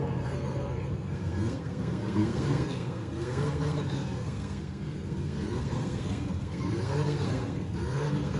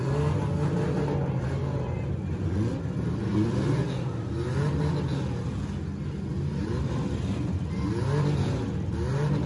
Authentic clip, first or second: second